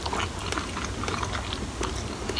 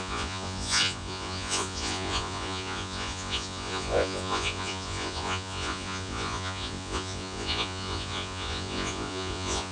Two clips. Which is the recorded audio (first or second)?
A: first